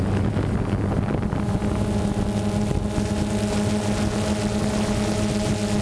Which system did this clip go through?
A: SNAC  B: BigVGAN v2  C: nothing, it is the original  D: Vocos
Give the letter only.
C